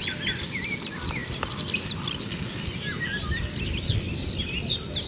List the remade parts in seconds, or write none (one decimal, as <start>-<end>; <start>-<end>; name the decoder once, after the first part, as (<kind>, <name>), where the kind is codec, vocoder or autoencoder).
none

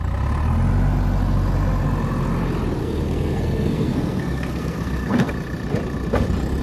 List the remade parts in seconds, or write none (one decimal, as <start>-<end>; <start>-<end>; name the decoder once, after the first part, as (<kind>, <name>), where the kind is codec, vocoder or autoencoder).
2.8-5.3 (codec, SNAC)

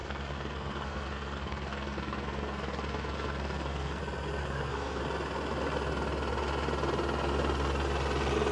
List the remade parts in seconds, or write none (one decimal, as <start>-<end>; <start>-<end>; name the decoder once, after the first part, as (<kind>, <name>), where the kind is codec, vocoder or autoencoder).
0.0-4.0 (codec, SNAC); 4.4-5.0